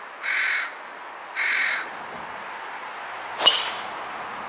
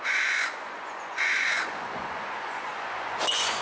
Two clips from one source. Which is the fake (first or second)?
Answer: second